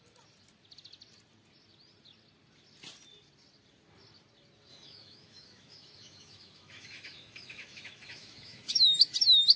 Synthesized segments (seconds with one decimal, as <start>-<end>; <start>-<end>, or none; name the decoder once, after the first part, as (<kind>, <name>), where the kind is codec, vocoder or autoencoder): 4.7-8.8 (autoencoder, DAC-VAE)